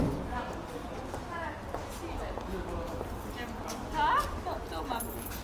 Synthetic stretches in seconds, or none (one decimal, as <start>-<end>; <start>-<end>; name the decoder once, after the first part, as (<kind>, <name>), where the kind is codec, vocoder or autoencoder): none